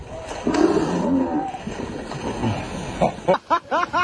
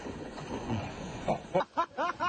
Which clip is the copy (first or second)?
second